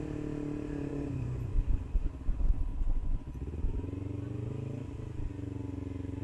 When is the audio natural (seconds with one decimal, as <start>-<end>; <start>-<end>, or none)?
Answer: 0.0-0.9; 2.1-2.7; 4.5-6.2